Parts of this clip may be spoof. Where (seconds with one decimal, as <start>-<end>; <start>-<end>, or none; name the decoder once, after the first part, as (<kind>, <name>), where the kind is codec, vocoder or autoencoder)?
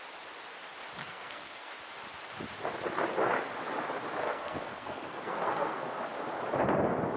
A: 1.0-1.7 (codec, SNAC); 4.2-5.9